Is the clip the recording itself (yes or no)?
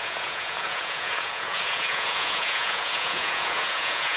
no